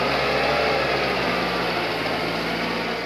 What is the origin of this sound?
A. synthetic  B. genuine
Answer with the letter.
B